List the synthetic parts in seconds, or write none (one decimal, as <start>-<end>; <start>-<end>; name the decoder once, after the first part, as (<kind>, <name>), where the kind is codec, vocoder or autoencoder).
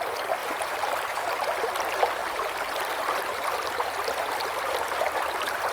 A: 0.4-1.2 (vocoder, BigVGAN v2)